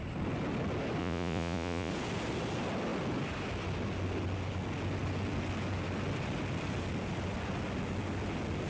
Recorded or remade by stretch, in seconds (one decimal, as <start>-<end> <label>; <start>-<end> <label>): 0.0-1.0 recorded; 1.0-1.9 remade; 1.9-8.7 recorded